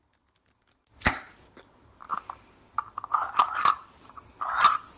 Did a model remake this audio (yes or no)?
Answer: no